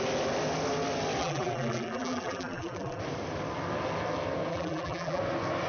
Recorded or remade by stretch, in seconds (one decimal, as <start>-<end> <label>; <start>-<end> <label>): 0.0-1.2 recorded; 1.2-3.0 remade; 3.0-4.5 recorded; 4.5-5.2 remade; 5.2-5.7 recorded